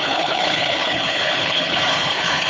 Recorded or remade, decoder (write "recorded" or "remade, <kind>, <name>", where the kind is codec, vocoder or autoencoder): remade, codec, HILCodec